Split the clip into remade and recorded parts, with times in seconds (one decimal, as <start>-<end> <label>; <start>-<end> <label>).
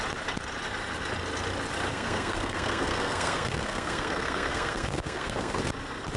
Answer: 0.0-1.9 recorded; 1.9-5.6 remade; 5.6-6.2 recorded